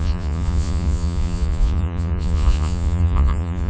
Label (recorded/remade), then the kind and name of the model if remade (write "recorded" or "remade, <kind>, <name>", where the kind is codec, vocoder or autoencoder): remade, vocoder, Vocos